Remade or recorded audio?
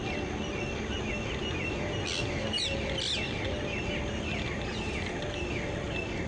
recorded